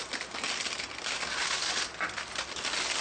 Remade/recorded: recorded